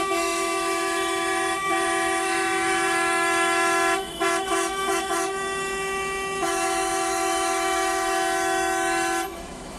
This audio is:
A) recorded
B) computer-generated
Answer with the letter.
B